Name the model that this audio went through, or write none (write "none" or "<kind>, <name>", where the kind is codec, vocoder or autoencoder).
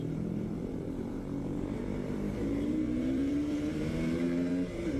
vocoder, BigVGAN v2